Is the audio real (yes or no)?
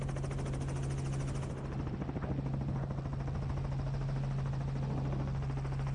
yes